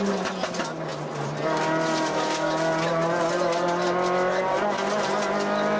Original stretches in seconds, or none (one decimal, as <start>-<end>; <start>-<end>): 0.0-5.8